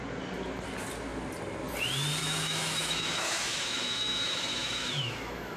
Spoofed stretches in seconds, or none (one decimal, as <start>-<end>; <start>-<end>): 2.2-5.6